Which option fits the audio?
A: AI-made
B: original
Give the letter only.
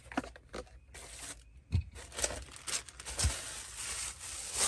B